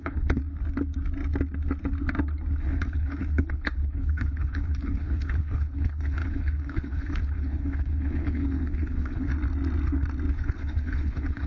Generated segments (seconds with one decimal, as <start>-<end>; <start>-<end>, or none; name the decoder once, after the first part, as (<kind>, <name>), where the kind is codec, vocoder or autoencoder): 0.0-0.4 (codec, HILCodec); 2.6-9.3; 10.3-11.5